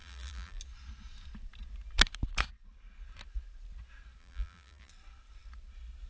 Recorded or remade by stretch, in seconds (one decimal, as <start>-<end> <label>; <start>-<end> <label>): 0.0-0.6 remade; 0.6-4.2 recorded; 4.2-4.9 remade; 4.9-6.1 recorded